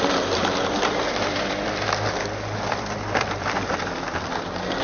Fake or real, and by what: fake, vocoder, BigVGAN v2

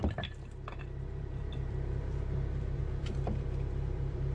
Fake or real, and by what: fake, vocoder, BigVGAN v2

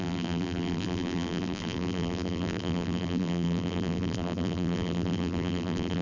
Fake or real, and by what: fake, vocoder, BigVGAN v2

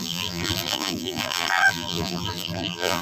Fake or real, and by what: fake, vocoder, BigVGAN v2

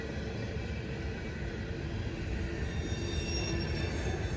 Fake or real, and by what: real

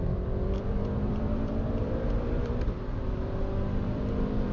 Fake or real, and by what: fake, vocoder, BigVGAN v2